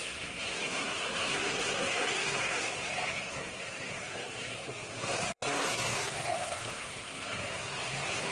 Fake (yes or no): yes